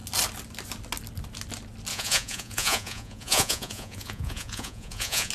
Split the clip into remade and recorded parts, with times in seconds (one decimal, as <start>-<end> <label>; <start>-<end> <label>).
0.0-1.9 recorded; 1.9-5.3 remade